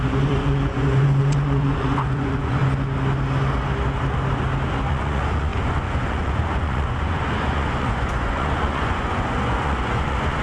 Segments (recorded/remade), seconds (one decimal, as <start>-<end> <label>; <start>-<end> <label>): 0.0-2.6 remade; 2.6-4.9 recorded; 4.9-10.4 remade